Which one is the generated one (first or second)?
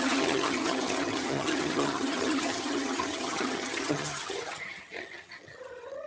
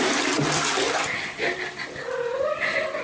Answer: first